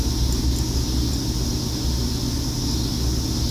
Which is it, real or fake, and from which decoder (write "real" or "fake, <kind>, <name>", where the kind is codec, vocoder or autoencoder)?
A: real